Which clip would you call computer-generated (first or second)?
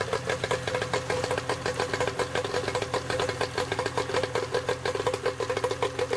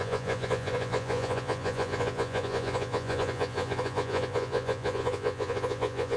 second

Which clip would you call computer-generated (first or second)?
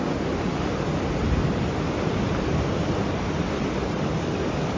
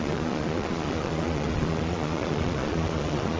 second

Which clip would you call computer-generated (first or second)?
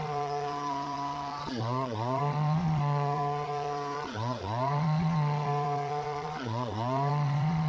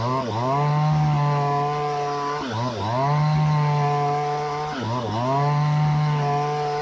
first